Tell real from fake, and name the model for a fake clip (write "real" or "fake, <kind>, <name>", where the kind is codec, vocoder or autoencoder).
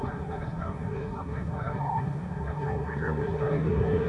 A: fake, codec, SNAC